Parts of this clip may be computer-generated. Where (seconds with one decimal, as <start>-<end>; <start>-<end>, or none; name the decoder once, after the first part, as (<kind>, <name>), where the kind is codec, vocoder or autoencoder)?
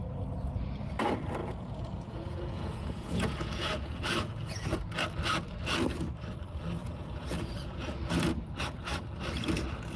1.4-4.8 (vocoder, Vocos); 6.8-8.1